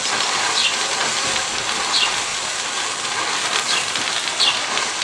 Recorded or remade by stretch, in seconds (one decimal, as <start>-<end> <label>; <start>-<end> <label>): 0.0-5.0 recorded